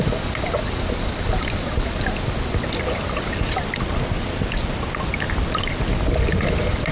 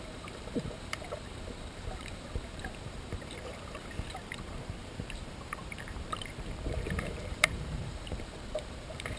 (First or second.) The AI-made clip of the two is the second